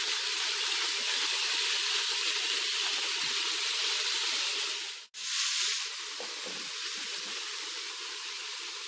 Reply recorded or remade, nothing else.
recorded